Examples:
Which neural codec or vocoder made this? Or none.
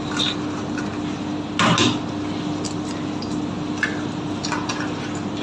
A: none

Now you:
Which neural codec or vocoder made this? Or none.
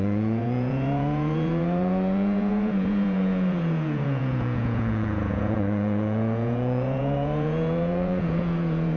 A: vocoder, Vocos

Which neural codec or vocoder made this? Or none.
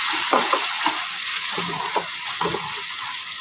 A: vocoder, Vocos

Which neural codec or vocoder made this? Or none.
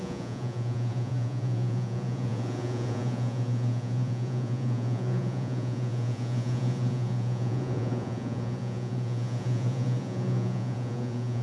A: vocoder, Vocos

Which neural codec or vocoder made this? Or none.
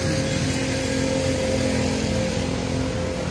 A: none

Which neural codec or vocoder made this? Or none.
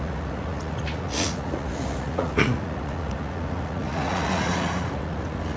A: vocoder, Vocos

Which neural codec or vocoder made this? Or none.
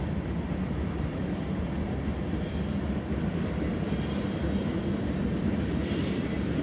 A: none